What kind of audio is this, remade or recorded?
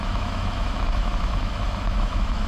remade